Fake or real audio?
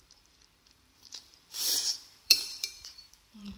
fake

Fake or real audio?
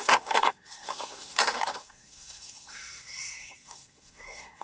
fake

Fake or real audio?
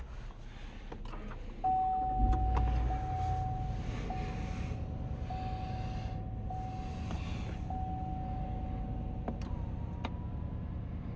real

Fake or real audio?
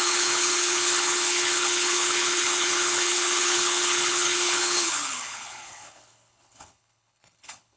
fake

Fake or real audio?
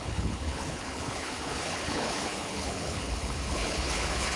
fake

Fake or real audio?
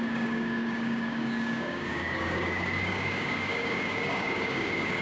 fake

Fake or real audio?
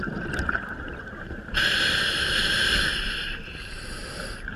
fake